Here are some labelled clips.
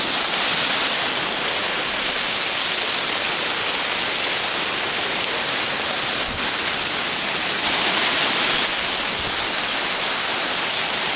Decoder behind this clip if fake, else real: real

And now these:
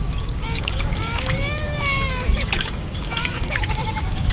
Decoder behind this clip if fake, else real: fake, codec, DAC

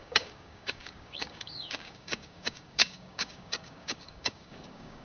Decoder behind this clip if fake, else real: fake, codec, DAC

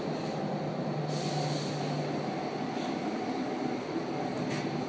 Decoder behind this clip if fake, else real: real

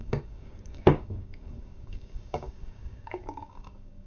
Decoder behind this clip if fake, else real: fake, codec, DAC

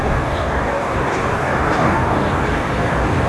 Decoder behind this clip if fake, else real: fake, codec, DAC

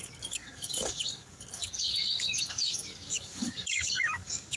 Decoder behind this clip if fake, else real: fake, codec, DAC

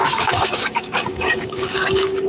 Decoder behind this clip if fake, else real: fake, codec, DAC